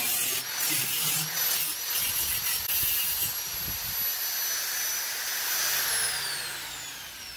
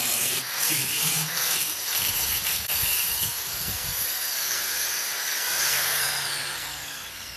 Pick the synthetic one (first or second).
second